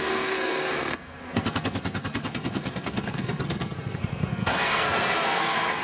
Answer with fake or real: fake